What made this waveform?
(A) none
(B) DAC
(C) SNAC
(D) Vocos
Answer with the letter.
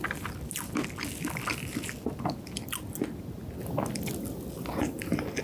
A